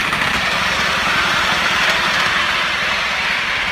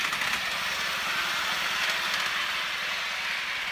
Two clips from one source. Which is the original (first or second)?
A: second